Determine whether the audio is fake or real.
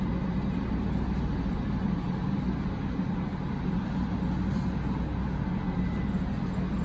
real